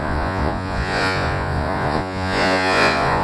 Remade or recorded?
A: remade